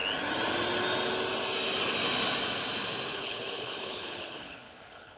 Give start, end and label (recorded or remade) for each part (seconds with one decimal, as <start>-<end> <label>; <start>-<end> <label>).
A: 0.0-3.1 recorded; 3.1-5.2 remade